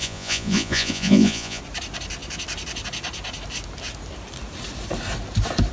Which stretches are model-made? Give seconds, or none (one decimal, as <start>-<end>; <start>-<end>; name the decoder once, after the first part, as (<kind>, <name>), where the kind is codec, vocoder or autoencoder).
0.0-1.6 (vocoder, Vocos)